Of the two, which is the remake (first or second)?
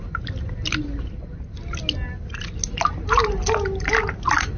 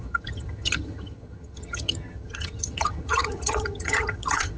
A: second